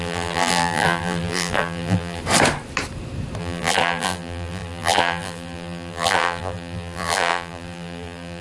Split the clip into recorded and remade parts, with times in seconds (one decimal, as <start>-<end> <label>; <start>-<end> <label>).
0.0-2.2 remade; 2.2-3.4 recorded; 3.4-8.4 remade

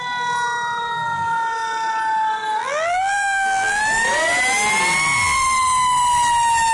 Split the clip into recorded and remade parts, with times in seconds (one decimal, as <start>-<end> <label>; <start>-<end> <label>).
0.0-2.6 recorded; 2.6-3.8 remade; 3.8-6.7 recorded

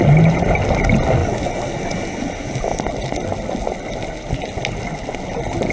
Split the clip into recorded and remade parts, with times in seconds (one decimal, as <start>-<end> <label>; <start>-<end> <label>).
0.0-5.7 recorded

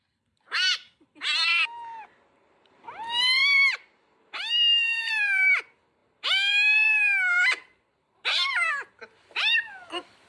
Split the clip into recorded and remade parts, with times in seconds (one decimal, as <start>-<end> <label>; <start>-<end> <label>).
0.0-1.5 remade; 1.5-2.7 recorded; 2.7-3.4 remade; 3.4-4.2 recorded; 4.2-10.3 remade

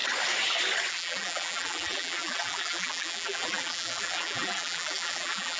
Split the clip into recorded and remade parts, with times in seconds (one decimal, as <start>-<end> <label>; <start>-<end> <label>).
0.0-0.9 recorded; 0.9-5.6 remade